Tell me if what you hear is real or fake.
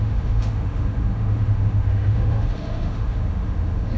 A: fake